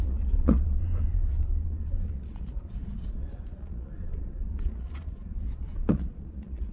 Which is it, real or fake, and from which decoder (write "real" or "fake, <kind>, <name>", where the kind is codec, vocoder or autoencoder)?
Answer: fake, vocoder, Vocos